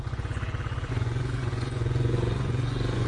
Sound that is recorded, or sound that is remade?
remade